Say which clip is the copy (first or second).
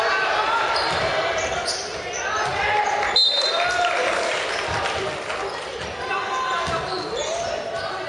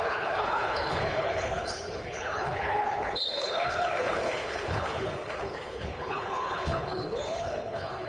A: second